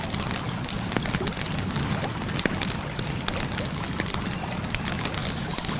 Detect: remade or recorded recorded